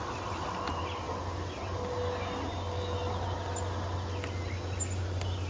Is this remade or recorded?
recorded